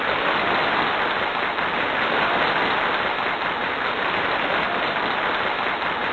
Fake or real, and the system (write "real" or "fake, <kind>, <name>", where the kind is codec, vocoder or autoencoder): real